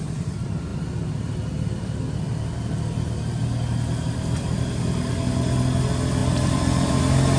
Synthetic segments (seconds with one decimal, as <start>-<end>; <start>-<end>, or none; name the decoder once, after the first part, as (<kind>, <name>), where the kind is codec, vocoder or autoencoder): none